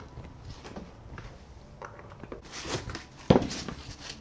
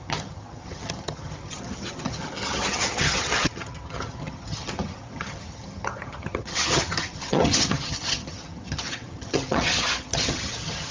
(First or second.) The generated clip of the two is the second